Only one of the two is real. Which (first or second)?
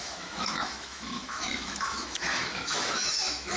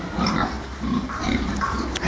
second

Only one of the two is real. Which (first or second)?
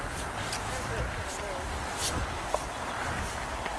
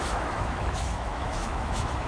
first